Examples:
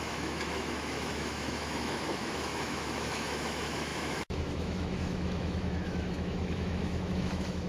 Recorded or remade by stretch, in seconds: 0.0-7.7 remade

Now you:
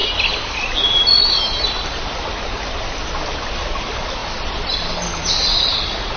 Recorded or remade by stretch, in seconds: 0.0-6.2 recorded

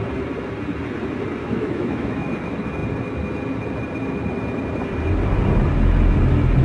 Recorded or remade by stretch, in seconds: 0.0-1.4 recorded; 1.4-2.3 remade; 2.3-6.6 recorded

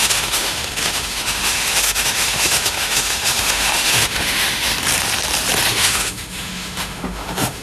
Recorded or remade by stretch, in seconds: 0.0-4.7 remade; 4.7-5.7 recorded; 5.7-7.6 remade

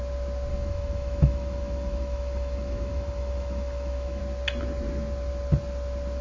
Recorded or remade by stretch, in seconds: 0.0-0.5 recorded; 0.5-4.2 remade; 4.2-6.2 recorded

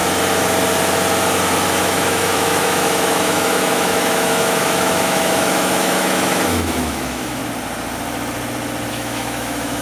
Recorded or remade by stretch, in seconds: 0.0-1.8 recorded; 1.8-7.4 remade; 7.4-8.9 recorded; 8.9-9.8 remade